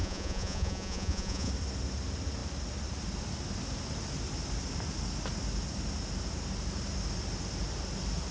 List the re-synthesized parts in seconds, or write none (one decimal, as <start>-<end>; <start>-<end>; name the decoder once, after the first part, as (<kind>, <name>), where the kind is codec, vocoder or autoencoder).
0.0-1.5 (vocoder, Vocos)